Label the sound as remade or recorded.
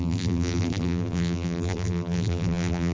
remade